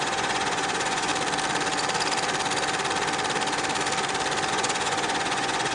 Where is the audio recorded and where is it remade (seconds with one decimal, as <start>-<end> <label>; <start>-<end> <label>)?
0.0-1.1 remade; 1.1-4.5 recorded; 4.5-5.7 remade